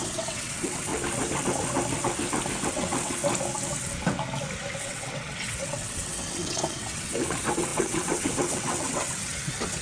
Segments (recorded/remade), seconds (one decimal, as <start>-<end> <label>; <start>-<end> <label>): 0.0-0.9 remade; 0.9-2.7 recorded; 2.7-3.2 remade; 3.2-4.7 recorded; 4.7-9.8 remade